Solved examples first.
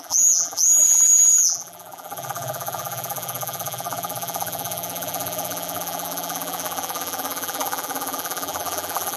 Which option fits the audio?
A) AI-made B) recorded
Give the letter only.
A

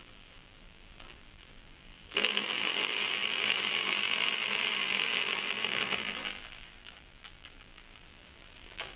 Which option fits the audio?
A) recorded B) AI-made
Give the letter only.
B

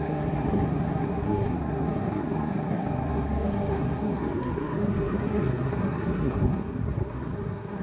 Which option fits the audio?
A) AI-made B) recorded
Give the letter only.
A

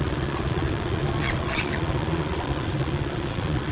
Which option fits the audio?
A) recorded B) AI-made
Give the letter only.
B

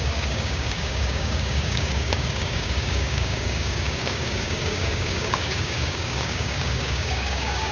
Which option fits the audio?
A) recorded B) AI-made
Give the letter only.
B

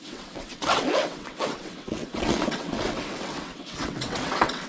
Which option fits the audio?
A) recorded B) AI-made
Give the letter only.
B